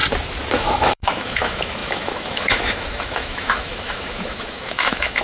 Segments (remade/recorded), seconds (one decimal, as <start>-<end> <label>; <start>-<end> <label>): 0.0-0.5 recorded; 0.5-5.2 remade